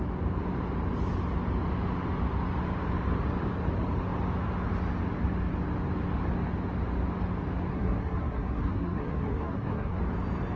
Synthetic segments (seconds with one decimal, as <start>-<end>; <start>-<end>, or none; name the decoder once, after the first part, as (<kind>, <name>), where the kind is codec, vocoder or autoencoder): 7.7-10.0 (codec, SNAC)